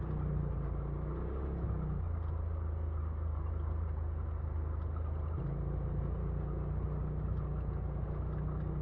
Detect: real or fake real